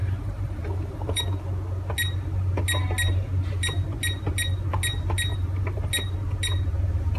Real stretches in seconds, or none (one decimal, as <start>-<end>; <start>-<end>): 1.2-5.3; 5.9-7.2